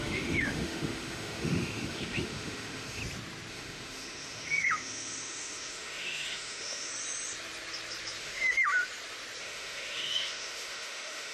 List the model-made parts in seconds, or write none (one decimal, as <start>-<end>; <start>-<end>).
0.0-3.0; 3.5-6.9; 8.2-8.7; 9.4-11.3